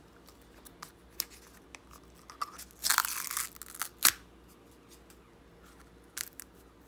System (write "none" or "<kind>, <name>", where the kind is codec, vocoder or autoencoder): none